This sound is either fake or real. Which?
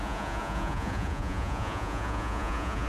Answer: fake